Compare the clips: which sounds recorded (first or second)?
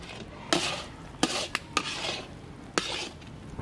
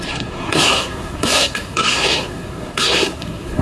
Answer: first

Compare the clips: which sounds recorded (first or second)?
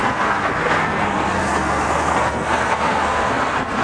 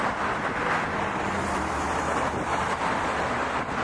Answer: second